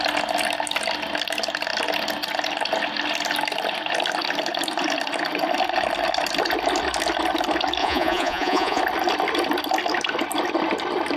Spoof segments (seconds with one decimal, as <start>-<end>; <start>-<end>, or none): 7.8-8.8